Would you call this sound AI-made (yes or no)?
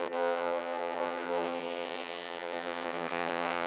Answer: yes